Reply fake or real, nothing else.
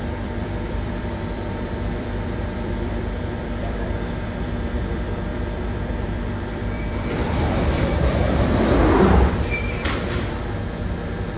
fake